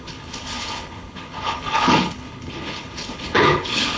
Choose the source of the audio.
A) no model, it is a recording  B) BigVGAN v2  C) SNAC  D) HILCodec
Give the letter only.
D